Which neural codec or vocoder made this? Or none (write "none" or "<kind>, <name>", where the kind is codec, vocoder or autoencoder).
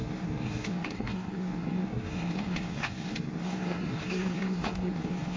codec, SNAC